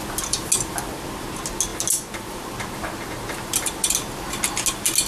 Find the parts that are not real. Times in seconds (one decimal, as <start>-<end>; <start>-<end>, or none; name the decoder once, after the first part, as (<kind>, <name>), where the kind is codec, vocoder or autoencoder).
none